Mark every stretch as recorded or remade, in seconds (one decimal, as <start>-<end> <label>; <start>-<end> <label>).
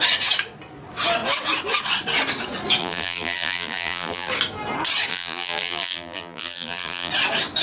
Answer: 0.0-2.8 recorded; 2.8-4.3 remade; 4.3-5.1 recorded; 5.1-7.1 remade; 7.1-7.6 recorded